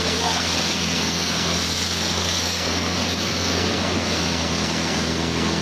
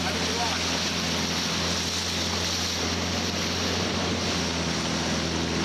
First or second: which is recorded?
second